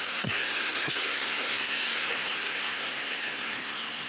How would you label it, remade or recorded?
remade